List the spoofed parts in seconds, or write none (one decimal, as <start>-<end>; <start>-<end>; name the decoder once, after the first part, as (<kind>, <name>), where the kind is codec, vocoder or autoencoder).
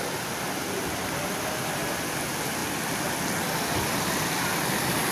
1.3-2.6 (vocoder, BigVGAN v2); 3.6-5.1